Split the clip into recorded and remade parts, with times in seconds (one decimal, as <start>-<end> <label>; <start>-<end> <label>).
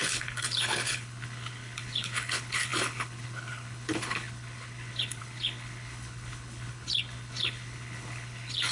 0.0-8.7 remade